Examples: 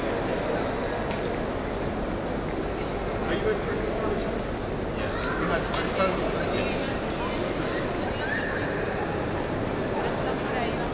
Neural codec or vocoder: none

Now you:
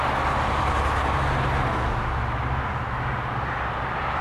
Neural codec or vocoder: none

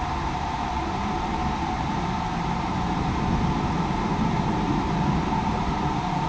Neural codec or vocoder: vocoder, BigVGAN v2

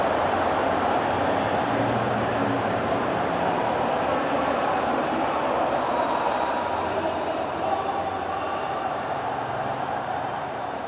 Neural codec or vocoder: vocoder, BigVGAN v2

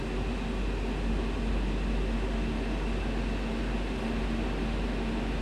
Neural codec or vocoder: none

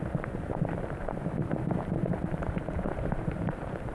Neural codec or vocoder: vocoder, BigVGAN v2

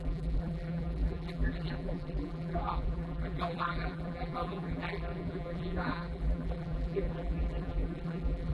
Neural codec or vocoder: vocoder, BigVGAN v2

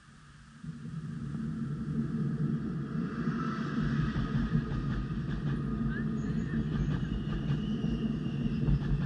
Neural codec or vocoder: none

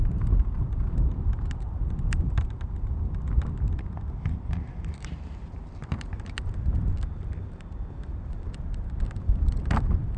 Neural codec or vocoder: vocoder, BigVGAN v2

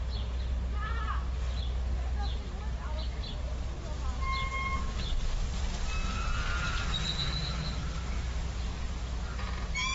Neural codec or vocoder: none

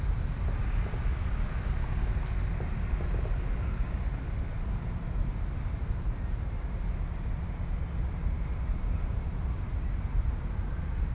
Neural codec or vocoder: none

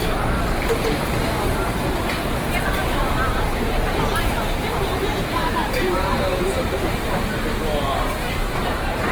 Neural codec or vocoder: vocoder, BigVGAN v2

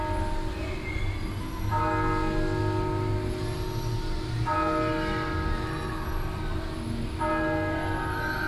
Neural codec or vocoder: none